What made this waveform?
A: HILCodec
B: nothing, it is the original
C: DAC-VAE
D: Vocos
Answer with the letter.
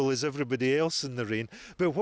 B